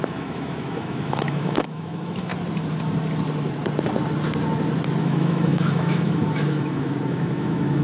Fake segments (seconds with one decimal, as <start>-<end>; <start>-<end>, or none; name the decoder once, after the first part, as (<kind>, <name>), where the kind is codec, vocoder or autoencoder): 0.0-2.3 (autoencoder, DAC-VAE); 5.0-7.8